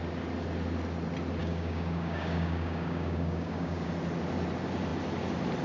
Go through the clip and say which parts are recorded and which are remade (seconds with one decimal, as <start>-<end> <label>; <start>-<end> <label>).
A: 0.0-1.4 recorded; 1.4-3.9 remade; 3.9-5.6 recorded